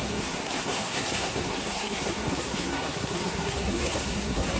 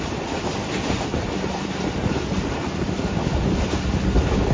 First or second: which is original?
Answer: second